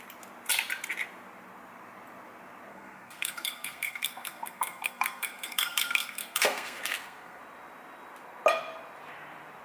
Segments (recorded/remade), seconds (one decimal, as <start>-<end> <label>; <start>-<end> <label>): 0.0-2.7 recorded; 2.7-7.4 remade; 7.4-9.6 recorded